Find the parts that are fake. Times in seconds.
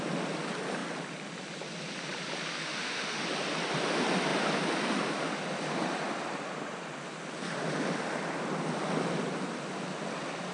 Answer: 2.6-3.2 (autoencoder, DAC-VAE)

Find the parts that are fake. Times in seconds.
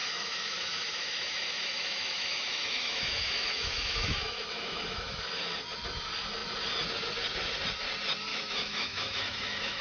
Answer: 0.0-5.2 (autoencoder, DAC-VAE); 8.3-9.8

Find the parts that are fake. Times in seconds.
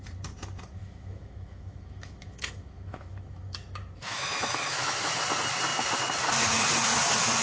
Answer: 0.8-5.2 (autoencoder, DAC-VAE)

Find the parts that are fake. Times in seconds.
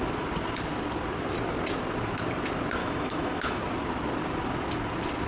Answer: 2.8-3.6 (autoencoder, DAC-VAE)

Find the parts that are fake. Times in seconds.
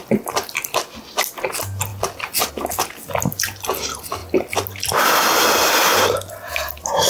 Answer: none